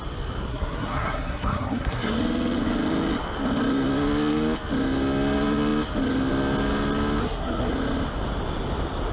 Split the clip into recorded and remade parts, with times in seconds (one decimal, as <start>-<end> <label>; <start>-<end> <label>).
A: 0.0-0.5 recorded; 0.5-2.2 remade; 2.2-7.2 recorded; 7.2-7.7 remade; 7.7-9.1 recorded